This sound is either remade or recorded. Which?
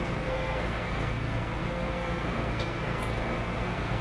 remade